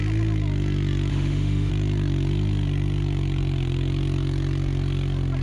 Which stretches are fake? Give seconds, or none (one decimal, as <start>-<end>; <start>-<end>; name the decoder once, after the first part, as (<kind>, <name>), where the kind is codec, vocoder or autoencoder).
1.1-1.7 (autoencoder, DAC-VAE)